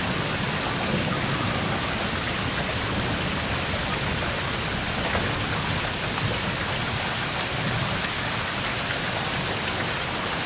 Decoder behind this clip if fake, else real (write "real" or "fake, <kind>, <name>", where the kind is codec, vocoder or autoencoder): real